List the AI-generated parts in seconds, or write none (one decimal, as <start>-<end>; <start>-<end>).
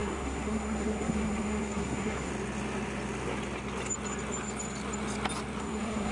0.0-2.3; 5.6-6.1